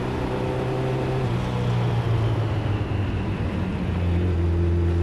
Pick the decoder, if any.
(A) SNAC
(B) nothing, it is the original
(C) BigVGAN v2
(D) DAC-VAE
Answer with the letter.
B